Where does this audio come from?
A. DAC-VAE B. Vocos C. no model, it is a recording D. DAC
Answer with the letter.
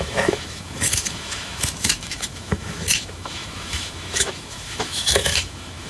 A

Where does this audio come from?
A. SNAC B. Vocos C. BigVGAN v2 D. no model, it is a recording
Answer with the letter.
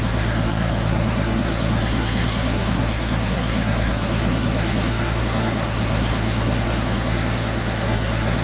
A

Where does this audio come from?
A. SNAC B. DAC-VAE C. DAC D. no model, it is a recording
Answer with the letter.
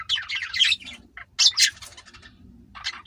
D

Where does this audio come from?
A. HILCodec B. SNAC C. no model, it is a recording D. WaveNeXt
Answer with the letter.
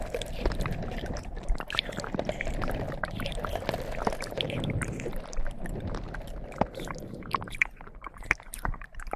C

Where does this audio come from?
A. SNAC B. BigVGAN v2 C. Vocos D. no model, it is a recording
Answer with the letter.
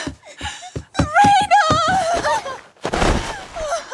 D